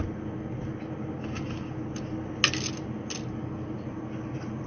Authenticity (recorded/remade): recorded